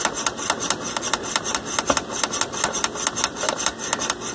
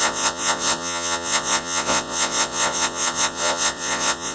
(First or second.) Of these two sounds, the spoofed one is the second